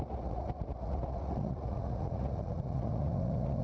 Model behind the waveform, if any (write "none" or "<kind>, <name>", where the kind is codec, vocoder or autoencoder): vocoder, Vocos